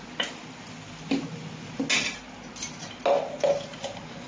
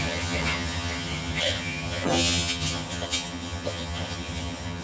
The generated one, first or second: second